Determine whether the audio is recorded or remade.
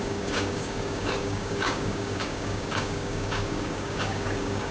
remade